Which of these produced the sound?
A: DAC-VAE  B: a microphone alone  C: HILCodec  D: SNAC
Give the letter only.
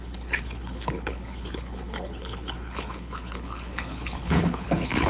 C